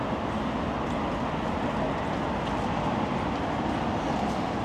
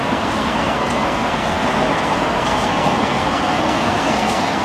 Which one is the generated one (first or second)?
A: second